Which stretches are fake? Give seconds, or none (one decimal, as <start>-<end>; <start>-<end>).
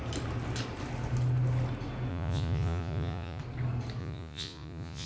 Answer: 2.1-3.4; 4.0-5.1